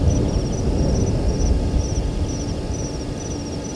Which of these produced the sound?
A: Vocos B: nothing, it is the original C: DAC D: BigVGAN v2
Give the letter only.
B